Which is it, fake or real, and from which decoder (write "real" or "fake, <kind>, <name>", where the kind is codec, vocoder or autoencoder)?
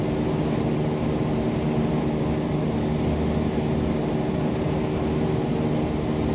real